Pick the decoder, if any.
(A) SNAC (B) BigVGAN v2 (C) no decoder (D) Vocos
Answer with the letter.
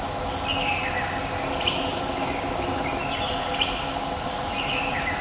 C